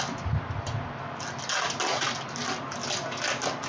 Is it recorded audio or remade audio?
recorded